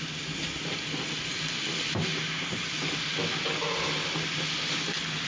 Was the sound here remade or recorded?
recorded